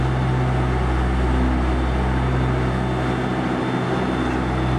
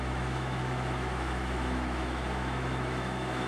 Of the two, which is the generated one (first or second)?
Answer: second